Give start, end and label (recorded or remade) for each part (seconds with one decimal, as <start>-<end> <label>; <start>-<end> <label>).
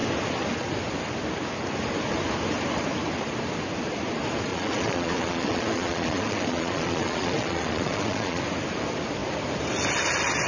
0.0-4.5 recorded; 4.5-8.4 remade; 8.4-10.5 recorded